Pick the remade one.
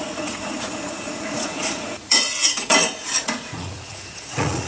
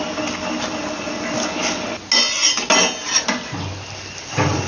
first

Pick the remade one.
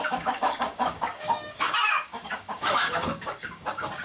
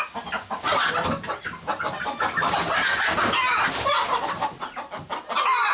first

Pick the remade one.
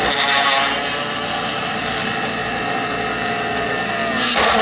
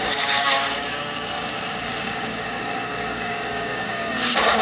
second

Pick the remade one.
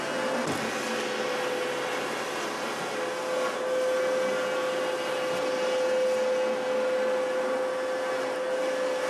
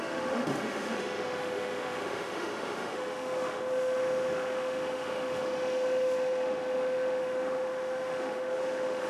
second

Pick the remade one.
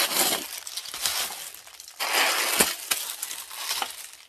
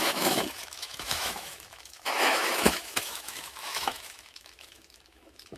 second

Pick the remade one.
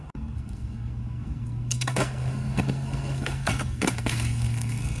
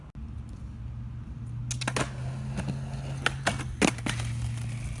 first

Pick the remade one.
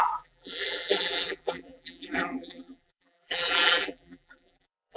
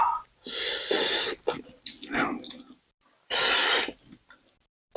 first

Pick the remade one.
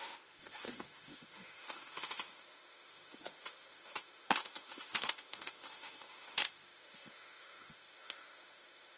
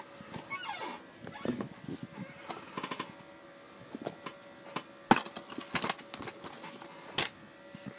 first